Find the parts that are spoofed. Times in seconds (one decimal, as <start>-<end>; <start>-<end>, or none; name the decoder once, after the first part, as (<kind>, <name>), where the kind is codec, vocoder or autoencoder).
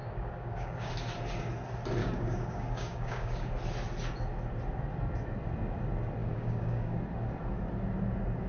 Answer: 0.0-0.9 (codec, DAC); 2.0-3.5; 6.2-7.0